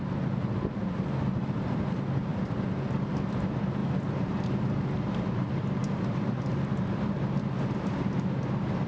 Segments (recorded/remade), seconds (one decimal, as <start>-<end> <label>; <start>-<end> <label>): 0.0-8.9 recorded